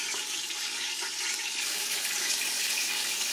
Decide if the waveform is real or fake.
fake